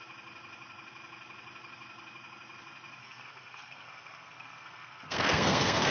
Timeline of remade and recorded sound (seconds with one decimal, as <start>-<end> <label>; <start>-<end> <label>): 0.0-3.0 recorded; 3.0-5.9 remade